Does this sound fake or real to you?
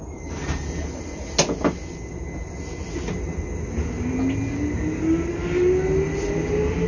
real